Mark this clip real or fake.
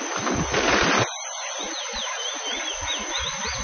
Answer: real